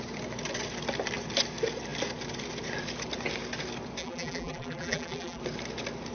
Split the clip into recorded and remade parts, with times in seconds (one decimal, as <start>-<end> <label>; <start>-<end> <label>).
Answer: 0.0-4.0 recorded; 4.0-5.4 remade; 5.4-6.1 recorded